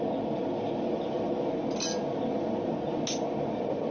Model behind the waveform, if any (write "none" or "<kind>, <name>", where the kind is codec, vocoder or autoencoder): none